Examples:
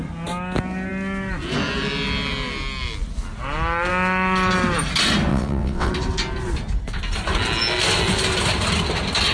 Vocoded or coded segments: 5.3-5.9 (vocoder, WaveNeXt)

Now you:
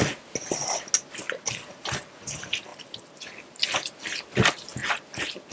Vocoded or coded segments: none